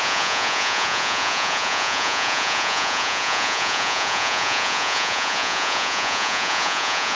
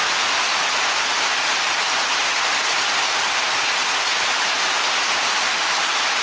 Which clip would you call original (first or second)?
second